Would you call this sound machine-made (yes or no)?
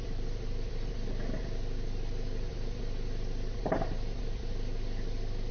yes